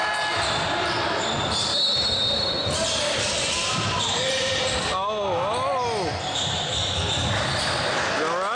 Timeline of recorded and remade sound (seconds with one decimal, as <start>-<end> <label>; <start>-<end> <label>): 0.0-2.6 recorded; 2.6-4.8 remade; 4.8-8.5 recorded